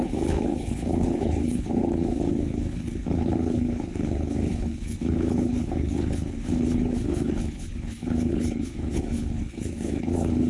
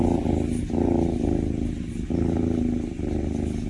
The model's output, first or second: first